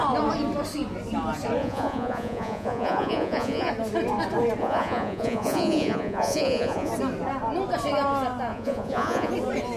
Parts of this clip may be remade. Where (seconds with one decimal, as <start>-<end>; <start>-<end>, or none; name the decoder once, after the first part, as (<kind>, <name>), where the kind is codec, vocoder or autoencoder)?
1.6-3.7 (vocoder, Vocos); 4.6-6.9; 8.5-9.3